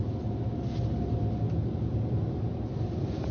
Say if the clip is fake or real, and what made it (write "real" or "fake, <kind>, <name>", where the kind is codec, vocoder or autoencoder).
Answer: real